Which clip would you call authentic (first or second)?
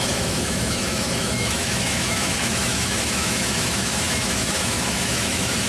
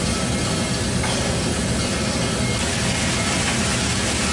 second